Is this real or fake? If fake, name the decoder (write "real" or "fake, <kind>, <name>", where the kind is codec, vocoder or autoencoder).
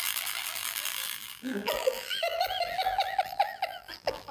fake, vocoder, BigVGAN v2